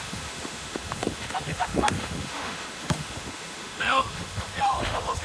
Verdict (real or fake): fake